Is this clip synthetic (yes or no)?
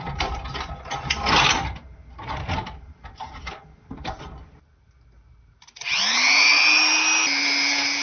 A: yes